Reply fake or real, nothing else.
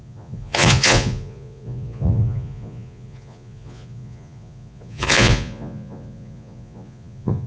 fake